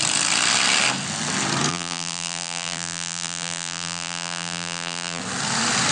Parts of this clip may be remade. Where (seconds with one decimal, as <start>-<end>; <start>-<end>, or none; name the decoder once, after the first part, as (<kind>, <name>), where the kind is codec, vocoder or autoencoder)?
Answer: 1.7-5.2 (vocoder, BigVGAN v2)